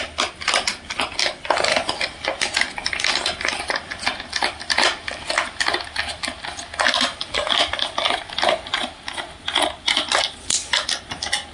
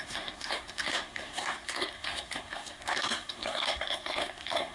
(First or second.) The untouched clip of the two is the first